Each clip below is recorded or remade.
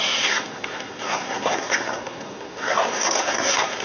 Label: remade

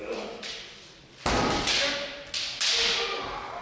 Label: recorded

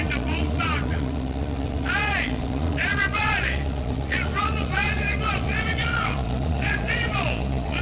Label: remade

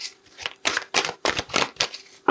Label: recorded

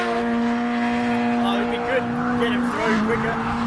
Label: recorded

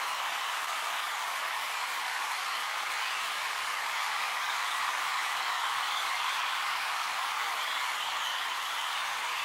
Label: remade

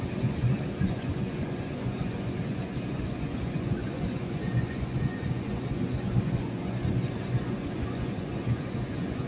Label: remade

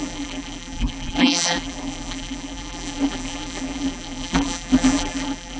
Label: remade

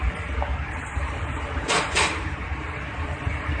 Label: remade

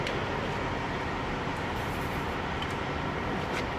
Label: recorded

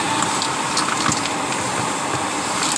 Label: remade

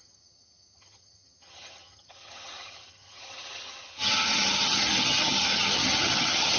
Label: remade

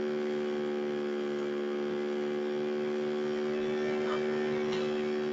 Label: recorded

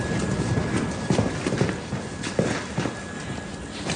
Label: recorded